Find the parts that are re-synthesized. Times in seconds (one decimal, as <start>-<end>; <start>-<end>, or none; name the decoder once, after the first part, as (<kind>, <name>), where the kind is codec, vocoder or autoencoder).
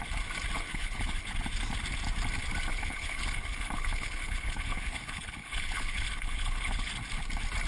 0.7-1.2 (codec, HILCodec); 2.7-6.9